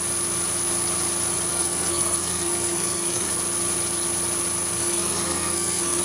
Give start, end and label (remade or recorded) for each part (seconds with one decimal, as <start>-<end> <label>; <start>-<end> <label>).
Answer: 0.0-1.5 recorded; 1.5-3.3 remade; 3.3-4.8 recorded; 4.8-6.0 remade

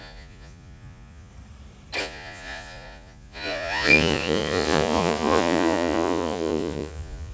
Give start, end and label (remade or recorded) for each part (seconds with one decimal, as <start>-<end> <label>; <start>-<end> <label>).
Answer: 0.0-1.3 remade; 1.3-2.0 recorded; 2.0-7.3 remade

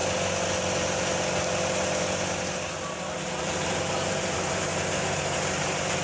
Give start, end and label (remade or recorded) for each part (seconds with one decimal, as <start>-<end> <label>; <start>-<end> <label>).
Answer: 0.0-3.4 recorded; 3.4-4.7 remade; 4.7-5.2 recorded; 5.2-6.0 remade

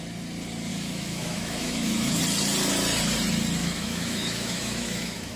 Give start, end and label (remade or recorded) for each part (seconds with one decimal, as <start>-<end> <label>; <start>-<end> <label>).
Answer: 0.0-0.7 recorded; 0.7-2.2 remade; 2.2-3.6 recorded; 3.6-5.4 remade